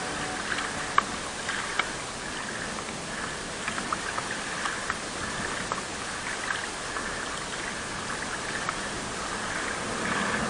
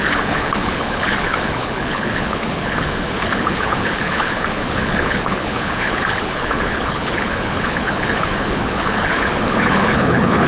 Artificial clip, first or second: second